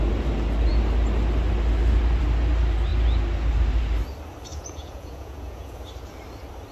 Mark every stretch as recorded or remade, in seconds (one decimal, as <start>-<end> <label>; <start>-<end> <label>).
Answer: 0.0-4.5 recorded; 4.5-5.8 remade; 5.8-6.7 recorded